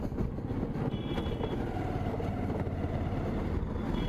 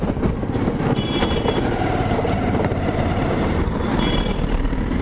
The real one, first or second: first